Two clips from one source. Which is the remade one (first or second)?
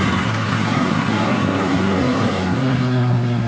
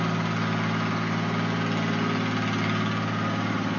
first